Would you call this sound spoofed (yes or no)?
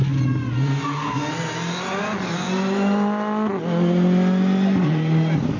no